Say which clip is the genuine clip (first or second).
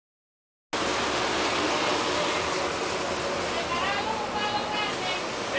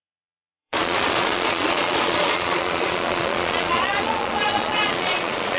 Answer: first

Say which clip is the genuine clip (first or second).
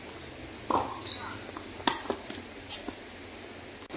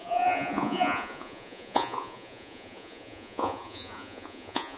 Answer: first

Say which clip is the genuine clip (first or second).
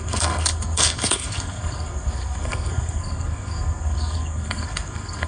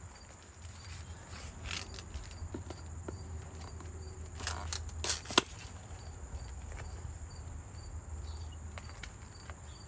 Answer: second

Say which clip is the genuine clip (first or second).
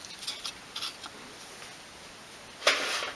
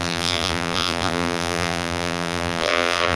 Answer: first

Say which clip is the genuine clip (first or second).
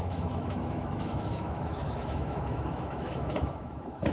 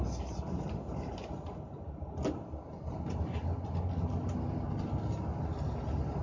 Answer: second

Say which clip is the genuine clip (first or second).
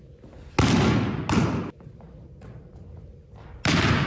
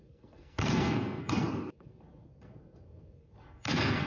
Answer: first